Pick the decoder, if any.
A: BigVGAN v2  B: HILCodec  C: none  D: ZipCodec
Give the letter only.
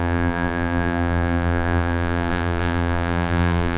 A